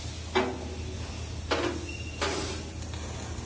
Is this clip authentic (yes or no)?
yes